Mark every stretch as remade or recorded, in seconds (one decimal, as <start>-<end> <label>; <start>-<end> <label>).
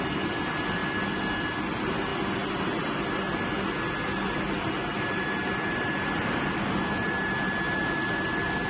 0.0-8.7 recorded